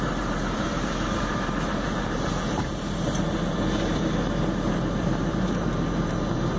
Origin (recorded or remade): remade